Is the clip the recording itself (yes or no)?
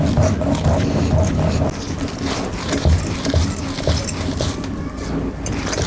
yes